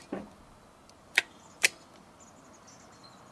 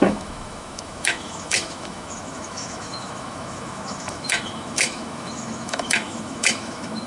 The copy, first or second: second